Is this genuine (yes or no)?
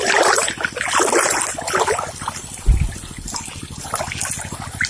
yes